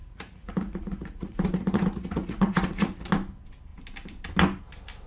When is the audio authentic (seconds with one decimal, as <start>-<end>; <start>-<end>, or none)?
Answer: 3.1-5.1